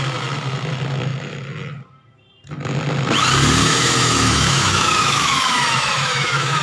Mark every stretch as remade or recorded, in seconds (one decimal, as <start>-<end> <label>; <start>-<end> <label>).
0.0-3.6 recorded; 3.6-6.6 remade